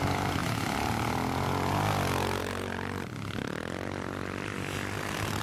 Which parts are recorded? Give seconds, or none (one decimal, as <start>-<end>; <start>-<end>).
0.0-5.4